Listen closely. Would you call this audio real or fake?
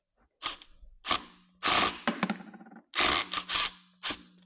real